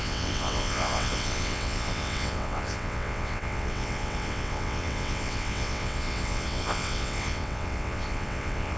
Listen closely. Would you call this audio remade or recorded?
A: remade